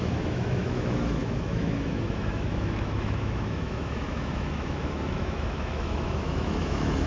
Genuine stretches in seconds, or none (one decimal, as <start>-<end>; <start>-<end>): none